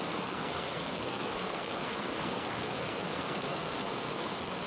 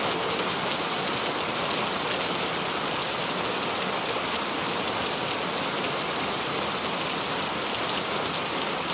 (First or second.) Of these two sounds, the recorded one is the second